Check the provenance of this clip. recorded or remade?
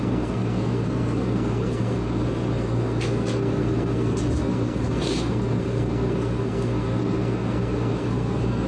remade